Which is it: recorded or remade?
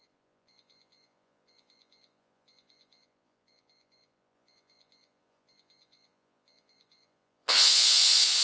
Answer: remade